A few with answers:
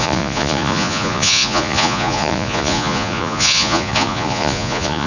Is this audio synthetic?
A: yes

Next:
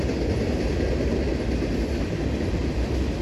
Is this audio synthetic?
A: no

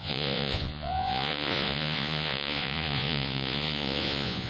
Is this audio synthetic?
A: yes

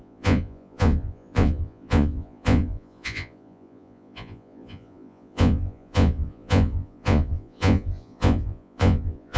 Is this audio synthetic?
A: yes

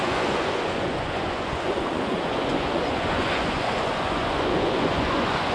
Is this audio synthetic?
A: yes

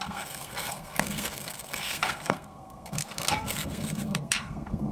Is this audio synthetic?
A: yes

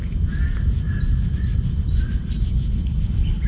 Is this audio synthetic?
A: no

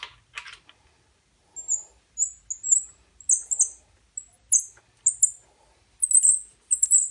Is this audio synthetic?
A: no